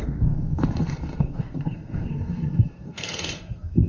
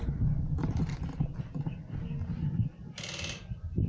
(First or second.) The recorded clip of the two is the second